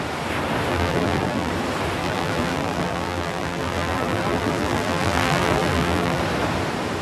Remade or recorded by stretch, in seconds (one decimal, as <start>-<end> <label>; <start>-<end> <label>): 0.0-0.7 recorded; 0.7-1.5 remade; 1.5-2.0 recorded; 2.0-6.2 remade; 6.2-7.0 recorded